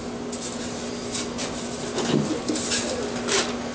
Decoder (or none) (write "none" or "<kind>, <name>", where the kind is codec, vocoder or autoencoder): none